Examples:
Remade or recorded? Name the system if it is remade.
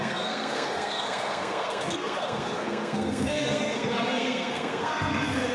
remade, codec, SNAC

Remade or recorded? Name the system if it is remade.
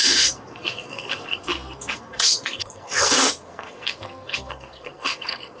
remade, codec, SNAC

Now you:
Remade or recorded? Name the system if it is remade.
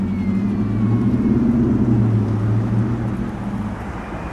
recorded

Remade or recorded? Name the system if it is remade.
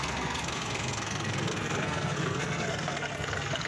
remade, codec, SNAC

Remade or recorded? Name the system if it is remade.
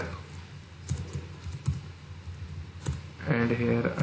recorded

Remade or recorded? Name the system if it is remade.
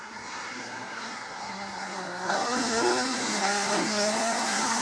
remade, codec, SNAC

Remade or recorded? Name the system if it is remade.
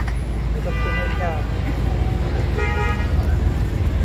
recorded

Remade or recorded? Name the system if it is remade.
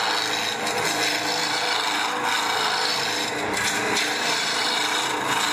recorded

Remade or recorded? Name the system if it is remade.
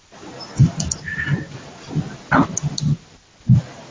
recorded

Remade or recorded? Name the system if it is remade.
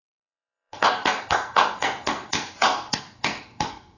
remade, codec, SNAC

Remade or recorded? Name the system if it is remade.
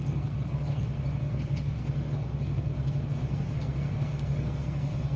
remade, codec, SNAC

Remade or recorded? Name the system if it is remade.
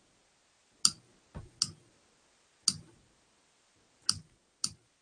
recorded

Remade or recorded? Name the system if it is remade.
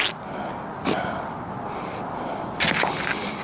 recorded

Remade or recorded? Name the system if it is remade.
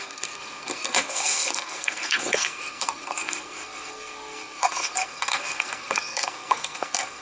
remade, codec, SNAC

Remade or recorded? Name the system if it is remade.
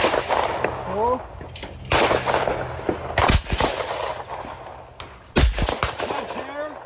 recorded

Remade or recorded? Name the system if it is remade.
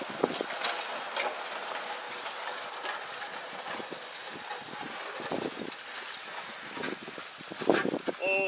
recorded